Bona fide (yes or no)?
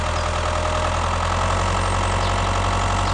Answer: yes